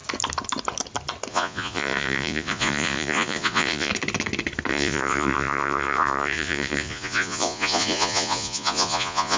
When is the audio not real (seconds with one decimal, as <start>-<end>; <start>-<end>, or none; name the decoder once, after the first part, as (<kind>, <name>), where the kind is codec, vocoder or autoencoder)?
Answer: 1.3-3.9 (vocoder, Vocos); 4.7-9.4